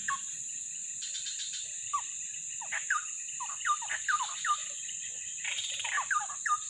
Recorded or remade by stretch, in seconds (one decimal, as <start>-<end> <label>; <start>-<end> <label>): 0.0-2.7 recorded; 2.7-3.7 remade; 3.7-4.6 recorded; 4.6-5.7 remade; 5.7-6.7 recorded